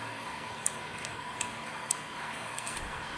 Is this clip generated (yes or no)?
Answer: yes